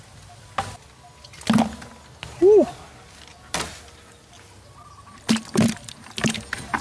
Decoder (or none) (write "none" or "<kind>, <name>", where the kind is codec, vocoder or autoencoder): none